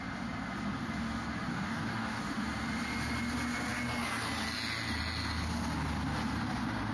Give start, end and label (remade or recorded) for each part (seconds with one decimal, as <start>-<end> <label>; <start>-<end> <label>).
0.0-1.5 recorded; 1.5-2.2 remade; 2.2-6.9 recorded